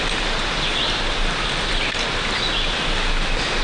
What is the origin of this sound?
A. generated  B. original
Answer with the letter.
B